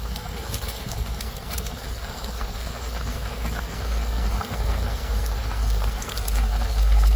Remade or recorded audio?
remade